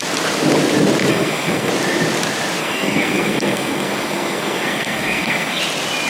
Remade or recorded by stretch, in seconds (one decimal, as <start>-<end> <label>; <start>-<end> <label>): 0.0-1.1 recorded; 1.1-1.7 remade; 1.7-2.6 recorded; 2.6-5.6 remade; 5.6-6.1 recorded